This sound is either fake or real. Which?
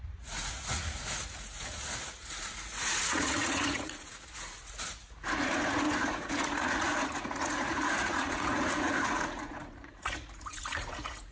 fake